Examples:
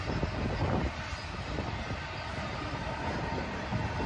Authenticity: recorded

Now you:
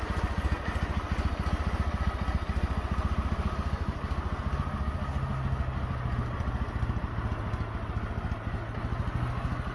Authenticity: recorded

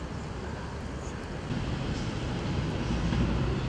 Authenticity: recorded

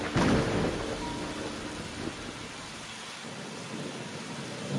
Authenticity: recorded